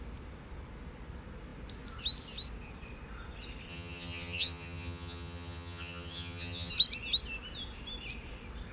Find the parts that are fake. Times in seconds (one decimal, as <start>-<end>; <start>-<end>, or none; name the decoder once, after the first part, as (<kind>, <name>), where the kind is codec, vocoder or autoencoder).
3.7-6.7 (vocoder, HiFi-GAN)